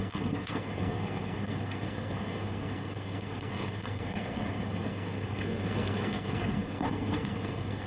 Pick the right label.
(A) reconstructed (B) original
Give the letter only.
A